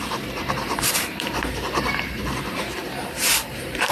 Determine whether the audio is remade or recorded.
remade